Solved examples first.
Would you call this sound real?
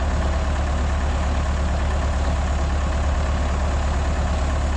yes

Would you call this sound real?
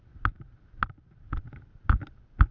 yes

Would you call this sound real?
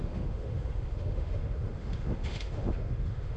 no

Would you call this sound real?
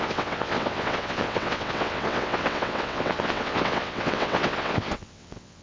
no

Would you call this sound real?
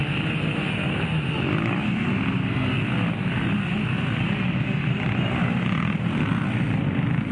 yes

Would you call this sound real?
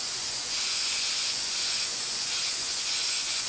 no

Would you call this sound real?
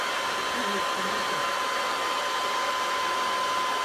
yes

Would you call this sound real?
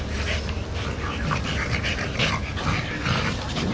yes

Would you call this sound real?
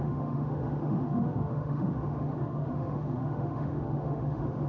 no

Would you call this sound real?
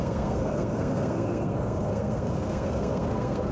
no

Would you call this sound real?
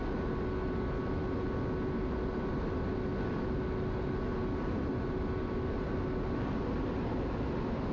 yes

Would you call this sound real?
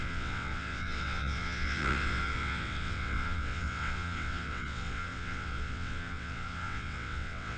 no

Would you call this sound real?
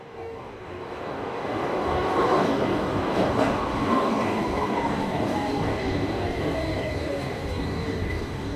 no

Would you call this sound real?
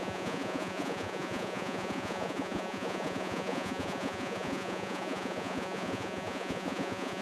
no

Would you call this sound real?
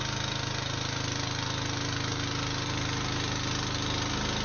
yes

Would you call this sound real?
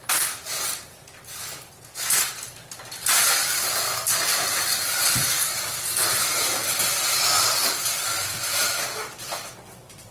yes